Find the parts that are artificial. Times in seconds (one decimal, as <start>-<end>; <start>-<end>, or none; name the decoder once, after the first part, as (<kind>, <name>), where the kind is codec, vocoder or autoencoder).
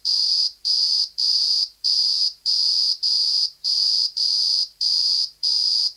0.0-6.0 (vocoder, BigVGAN v2)